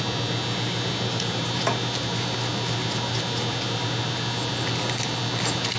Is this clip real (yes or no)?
yes